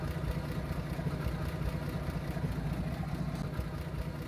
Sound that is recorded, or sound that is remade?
recorded